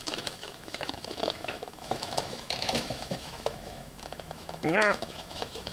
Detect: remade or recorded remade